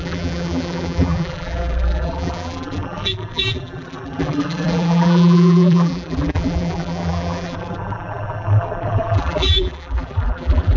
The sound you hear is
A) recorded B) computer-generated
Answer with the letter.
B